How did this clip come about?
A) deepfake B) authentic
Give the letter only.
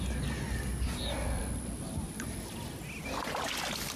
B